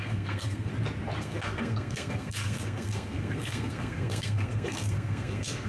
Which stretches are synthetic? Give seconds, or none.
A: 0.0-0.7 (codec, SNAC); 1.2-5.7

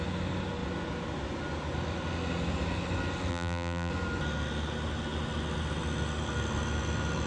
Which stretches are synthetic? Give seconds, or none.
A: 3.3-3.9 (vocoder, BigVGAN v2)

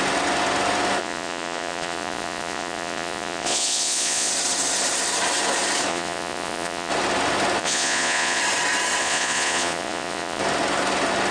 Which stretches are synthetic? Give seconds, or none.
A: 1.0-4.3 (vocoder, Vocos); 5.9-6.9; 7.6-8.4; 9.0-10.4

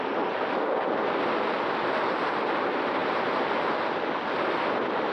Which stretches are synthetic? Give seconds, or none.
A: none

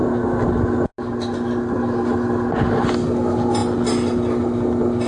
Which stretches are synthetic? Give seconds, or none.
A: none

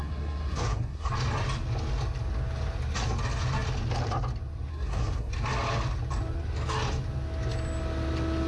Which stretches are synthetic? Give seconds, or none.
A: 0.0-1.1 (codec, SNAC); 4.7-5.3

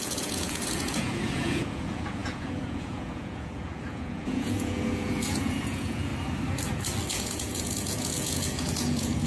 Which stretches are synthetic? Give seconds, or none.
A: 0.0-6.1 (vocoder, Vocos); 7.1-9.3